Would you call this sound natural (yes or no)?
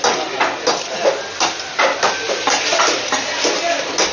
yes